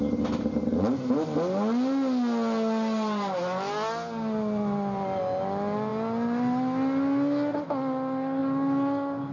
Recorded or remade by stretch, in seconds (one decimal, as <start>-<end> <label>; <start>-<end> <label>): 0.0-9.3 recorded